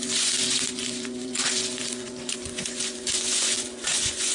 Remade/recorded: remade